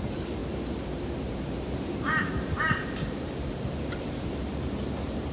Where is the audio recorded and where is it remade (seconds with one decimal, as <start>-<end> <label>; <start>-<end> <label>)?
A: 0.0-5.3 remade

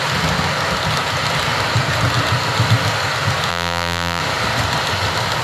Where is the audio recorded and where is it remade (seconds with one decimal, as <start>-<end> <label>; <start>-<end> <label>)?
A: 0.0-3.5 recorded; 3.5-4.2 remade; 4.2-5.4 recorded

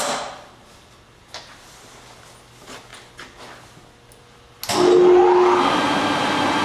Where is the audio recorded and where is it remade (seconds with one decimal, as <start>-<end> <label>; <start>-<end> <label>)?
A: 0.0-6.6 recorded

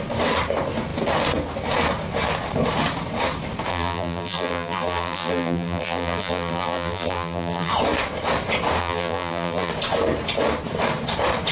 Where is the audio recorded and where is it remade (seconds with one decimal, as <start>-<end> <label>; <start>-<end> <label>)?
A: 0.0-3.7 recorded; 3.7-7.7 remade; 7.7-8.8 recorded; 8.8-9.7 remade; 9.7-11.5 recorded

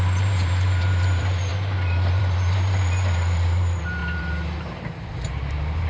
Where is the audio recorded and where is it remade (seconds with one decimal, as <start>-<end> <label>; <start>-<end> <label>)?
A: 0.0-5.9 remade

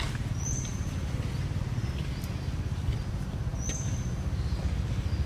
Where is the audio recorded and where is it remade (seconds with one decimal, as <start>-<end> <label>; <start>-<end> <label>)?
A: 0.0-5.3 recorded

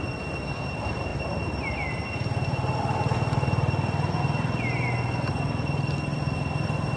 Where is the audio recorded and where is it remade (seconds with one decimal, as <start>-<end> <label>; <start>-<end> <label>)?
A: 0.0-7.0 recorded